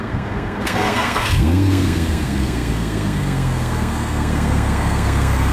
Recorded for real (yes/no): no